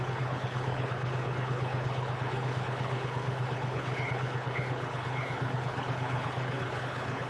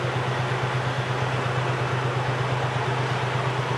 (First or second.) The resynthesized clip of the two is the first